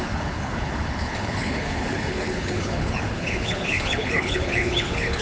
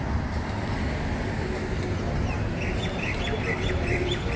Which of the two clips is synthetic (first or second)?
first